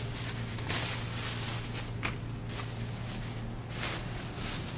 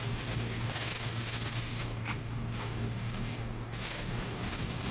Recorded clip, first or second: first